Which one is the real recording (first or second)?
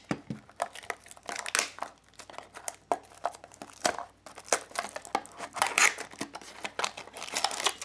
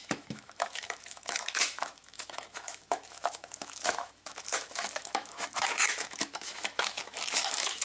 first